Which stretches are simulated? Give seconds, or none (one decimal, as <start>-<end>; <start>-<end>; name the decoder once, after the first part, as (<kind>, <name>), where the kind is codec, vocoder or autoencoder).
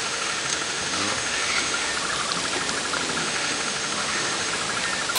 0.0-1.9 (autoencoder, DAC-VAE); 3.2-4.5